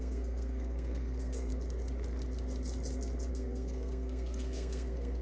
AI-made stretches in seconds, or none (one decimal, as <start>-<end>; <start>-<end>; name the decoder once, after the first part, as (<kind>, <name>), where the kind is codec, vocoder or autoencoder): 0.0-1.5 (codec, SNAC); 3.3-5.2